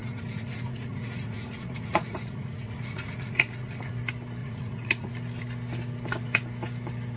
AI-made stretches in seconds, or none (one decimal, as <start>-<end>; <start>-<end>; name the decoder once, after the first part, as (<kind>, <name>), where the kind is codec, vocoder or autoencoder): 0.0-3.9 (vocoder, Vocos); 4.4-5.1